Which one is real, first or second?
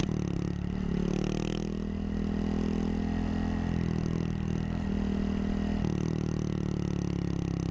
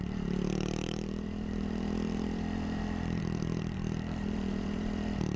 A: first